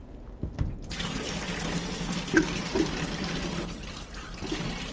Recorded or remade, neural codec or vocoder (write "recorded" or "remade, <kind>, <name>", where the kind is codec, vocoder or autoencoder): recorded